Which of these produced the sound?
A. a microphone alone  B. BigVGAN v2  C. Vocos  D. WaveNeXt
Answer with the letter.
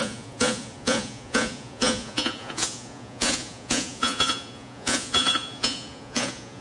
C